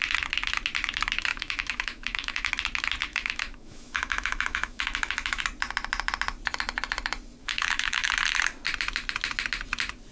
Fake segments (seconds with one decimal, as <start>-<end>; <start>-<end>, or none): 1.3-2.5; 3.1-5.4; 7.4-8.1